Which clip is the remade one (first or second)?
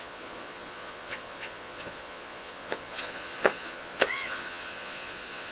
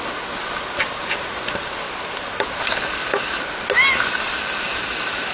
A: first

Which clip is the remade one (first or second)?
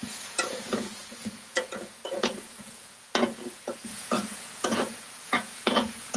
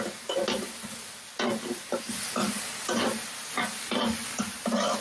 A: first